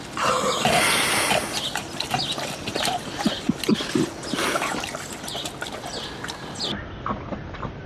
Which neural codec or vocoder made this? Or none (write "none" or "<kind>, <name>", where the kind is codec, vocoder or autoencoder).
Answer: none